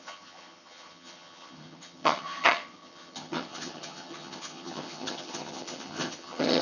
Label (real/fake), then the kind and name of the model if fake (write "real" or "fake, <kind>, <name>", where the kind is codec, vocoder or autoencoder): fake, vocoder, HiFi-GAN